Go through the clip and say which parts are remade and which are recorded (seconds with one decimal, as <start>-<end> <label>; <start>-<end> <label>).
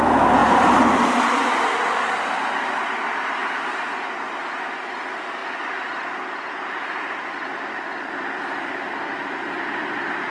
0.0-10.3 recorded